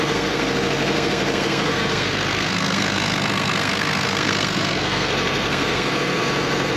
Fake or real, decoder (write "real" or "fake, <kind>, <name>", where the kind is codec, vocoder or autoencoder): fake, codec, SNAC